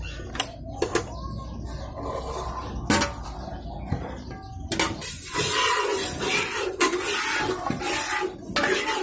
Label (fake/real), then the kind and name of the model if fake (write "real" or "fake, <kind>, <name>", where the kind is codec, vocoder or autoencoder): real